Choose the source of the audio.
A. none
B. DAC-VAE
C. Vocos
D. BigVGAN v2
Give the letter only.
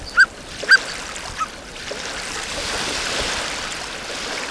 A